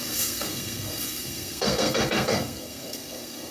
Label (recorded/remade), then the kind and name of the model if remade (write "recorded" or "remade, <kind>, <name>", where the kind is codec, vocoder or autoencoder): remade, codec, SNAC